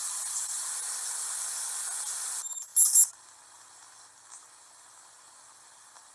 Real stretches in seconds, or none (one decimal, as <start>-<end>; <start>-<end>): 0.0-6.1